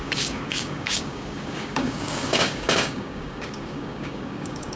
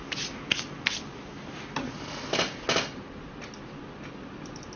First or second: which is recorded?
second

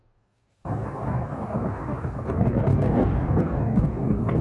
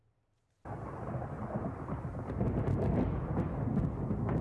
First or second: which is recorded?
second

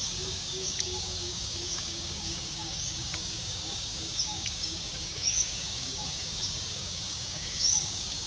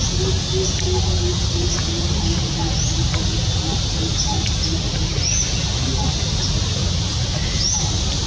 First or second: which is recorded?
second